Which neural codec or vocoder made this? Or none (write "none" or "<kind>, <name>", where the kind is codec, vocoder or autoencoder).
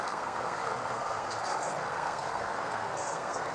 codec, SNAC